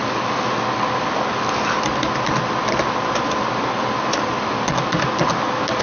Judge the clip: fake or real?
real